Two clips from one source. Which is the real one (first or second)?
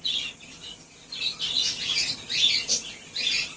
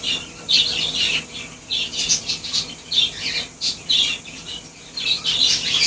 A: first